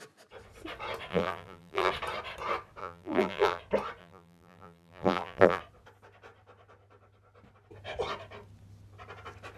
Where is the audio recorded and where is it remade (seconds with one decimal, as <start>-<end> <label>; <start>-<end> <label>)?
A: 0.0-1.1 recorded; 1.1-1.9 remade; 1.9-2.8 recorded; 2.8-3.6 remade; 3.6-4.0 recorded; 4.0-5.6 remade; 5.6-9.6 recorded